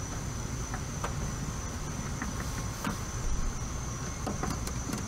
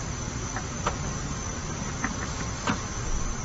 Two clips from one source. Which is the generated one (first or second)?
second